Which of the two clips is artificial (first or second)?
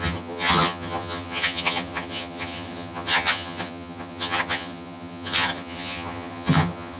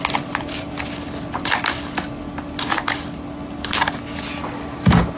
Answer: first